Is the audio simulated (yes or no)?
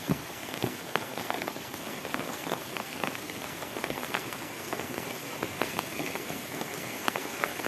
yes